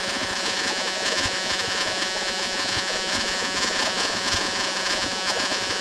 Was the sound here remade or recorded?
remade